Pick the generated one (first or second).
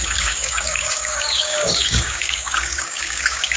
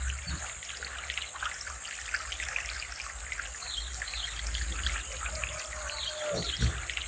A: first